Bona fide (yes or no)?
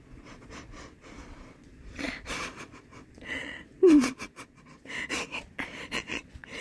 no